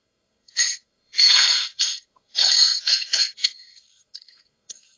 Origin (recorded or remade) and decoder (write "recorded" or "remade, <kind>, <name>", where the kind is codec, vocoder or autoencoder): remade, codec, SNAC